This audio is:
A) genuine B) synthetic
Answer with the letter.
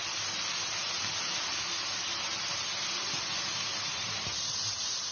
A